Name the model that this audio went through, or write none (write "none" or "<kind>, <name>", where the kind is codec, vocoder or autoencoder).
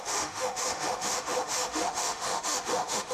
autoencoder, DAC-VAE